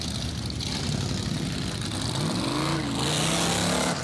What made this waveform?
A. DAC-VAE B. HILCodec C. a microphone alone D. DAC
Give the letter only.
C